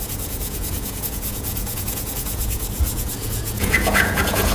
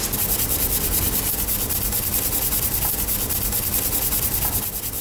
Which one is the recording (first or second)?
second